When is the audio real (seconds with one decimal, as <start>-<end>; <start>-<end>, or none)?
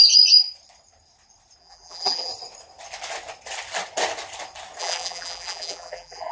0.0-1.6; 2.3-4.8